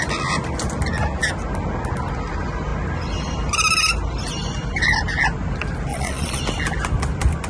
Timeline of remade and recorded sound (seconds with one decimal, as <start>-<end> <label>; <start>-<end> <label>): 0.0-5.9 recorded; 5.9-6.4 remade; 6.4-7.5 recorded